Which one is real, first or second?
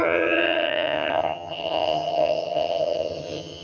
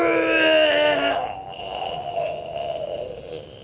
second